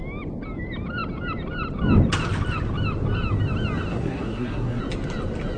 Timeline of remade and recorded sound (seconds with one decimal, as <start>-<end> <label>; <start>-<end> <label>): 0.0-3.9 recorded; 3.9-4.8 remade; 4.8-5.6 recorded